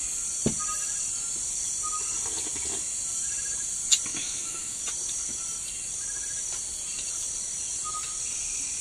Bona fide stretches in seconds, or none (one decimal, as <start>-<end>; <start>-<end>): 0.0-4.1; 4.8-8.8